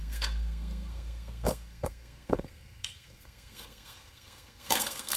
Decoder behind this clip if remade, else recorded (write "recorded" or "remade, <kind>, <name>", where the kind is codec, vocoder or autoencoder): remade, codec, SNAC